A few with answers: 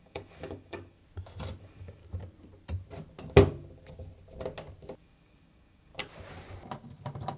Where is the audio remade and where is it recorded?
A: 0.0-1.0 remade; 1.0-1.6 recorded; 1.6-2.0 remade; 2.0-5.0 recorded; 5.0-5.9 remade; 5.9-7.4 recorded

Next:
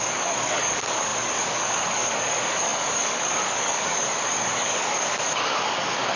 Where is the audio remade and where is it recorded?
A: 0.0-6.2 remade

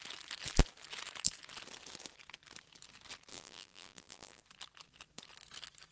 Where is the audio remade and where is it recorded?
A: 0.0-3.3 recorded; 3.3-4.4 remade; 4.4-5.9 recorded